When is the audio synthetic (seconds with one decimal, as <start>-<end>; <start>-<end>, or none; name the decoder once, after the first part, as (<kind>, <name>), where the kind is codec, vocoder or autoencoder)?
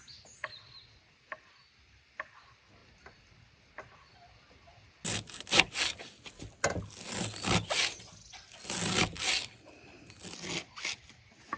none